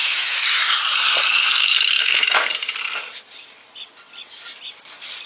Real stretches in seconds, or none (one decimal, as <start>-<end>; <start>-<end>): 0.6-1.5; 2.5-5.3